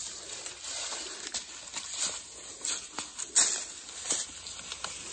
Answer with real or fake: real